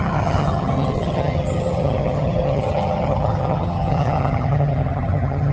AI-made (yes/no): yes